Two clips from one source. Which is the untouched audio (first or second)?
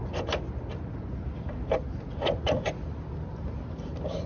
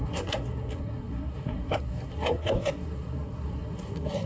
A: first